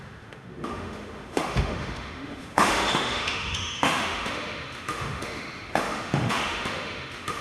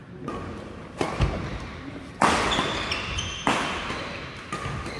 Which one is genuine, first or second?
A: second